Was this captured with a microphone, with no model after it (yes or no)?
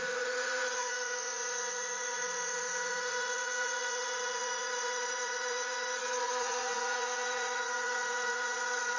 no